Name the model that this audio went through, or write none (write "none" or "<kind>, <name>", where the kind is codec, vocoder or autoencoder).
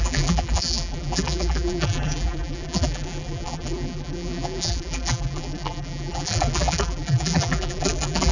vocoder, BigVGAN v2